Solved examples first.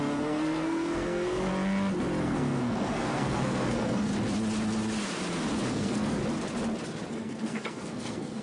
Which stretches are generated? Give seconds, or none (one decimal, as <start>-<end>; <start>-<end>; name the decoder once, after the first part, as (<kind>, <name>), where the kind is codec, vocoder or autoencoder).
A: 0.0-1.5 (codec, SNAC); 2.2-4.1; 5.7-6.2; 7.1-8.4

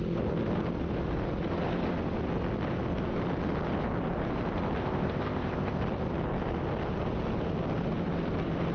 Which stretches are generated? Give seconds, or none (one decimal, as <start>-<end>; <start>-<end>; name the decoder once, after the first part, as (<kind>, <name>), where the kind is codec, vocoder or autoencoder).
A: 4.8-5.8 (codec, ZipCodec)

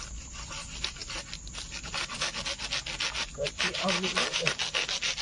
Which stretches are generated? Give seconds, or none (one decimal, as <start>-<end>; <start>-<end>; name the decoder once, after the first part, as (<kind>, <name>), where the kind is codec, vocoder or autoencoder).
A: 3.4-4.5 (vocoder, BigVGAN v2)